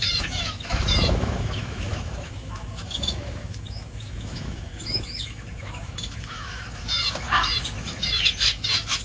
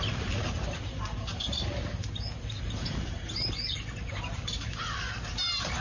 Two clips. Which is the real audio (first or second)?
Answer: second